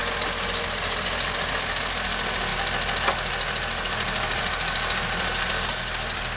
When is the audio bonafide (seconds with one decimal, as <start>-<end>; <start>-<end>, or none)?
0.0-6.4